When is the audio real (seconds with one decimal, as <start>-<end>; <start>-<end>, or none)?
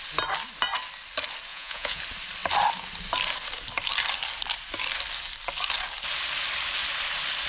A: 0.0-1.5; 2.0-7.5